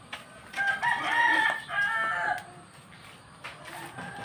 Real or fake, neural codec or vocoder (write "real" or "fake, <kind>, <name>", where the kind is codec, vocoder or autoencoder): real